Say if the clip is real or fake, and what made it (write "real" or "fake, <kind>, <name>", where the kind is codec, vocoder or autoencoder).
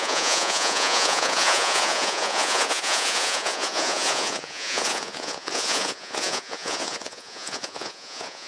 fake, vocoder, Vocos